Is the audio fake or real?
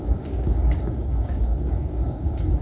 fake